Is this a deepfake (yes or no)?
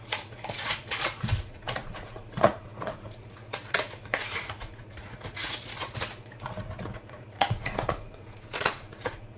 yes